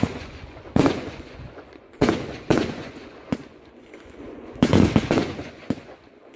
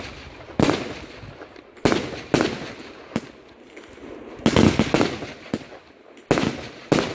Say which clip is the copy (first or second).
first